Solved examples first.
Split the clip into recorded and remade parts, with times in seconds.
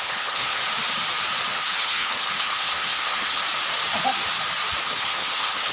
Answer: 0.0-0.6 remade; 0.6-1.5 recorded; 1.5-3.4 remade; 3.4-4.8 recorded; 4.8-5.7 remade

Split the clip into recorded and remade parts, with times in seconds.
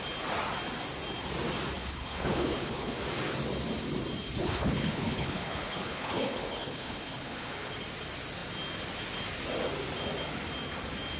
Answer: 0.0-1.8 recorded; 1.8-3.0 remade; 3.0-4.4 recorded; 4.4-7.7 remade; 7.7-11.2 recorded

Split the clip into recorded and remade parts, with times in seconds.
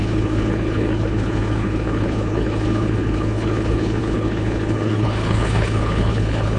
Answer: 0.0-6.6 remade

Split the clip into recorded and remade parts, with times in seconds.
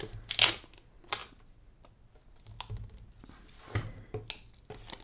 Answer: 0.0-5.0 recorded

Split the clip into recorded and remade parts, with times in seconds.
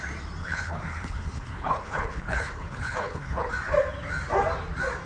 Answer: 0.0-0.4 recorded; 0.4-3.5 remade; 3.5-5.1 recorded